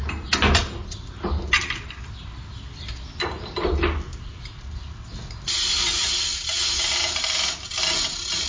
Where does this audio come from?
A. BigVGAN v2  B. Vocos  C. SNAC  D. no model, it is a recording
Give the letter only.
D